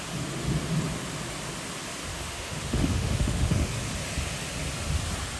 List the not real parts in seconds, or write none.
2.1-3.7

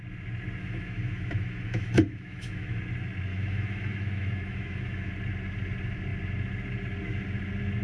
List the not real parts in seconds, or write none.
0.6-2.8; 3.3-5.1